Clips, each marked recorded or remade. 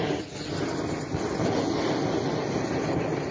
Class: recorded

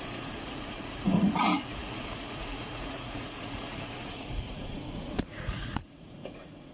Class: remade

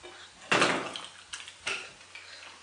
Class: recorded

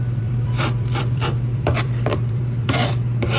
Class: remade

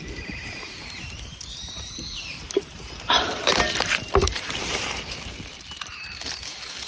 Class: remade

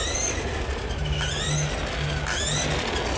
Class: recorded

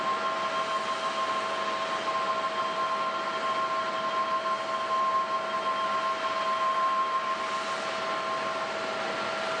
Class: recorded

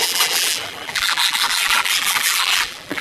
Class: remade